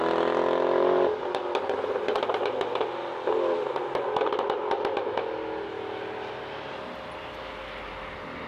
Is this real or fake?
real